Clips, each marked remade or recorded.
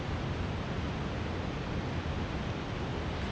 recorded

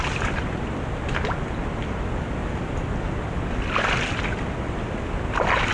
recorded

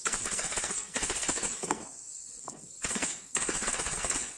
remade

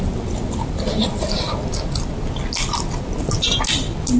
recorded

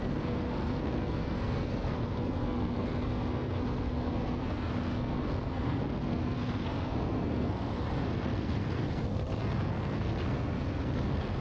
remade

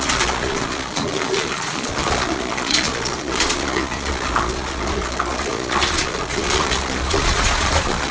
remade